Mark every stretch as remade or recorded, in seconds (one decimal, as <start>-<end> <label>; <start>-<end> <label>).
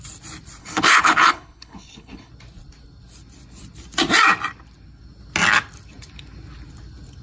0.0-0.6 recorded; 0.6-2.3 remade; 2.3-7.2 recorded